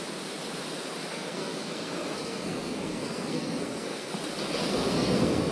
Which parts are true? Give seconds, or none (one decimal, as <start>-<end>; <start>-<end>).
0.0-1.1; 4.1-4.6